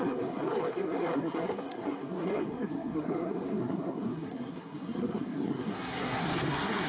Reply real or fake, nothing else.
fake